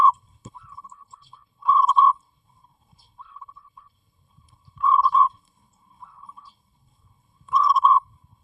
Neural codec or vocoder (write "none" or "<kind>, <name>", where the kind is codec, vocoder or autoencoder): codec, HILCodec